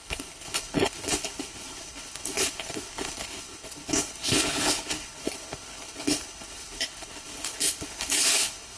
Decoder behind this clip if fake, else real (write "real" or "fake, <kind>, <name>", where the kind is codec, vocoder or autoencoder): fake, codec, HILCodec